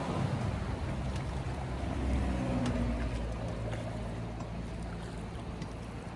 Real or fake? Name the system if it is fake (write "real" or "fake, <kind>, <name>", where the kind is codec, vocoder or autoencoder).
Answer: real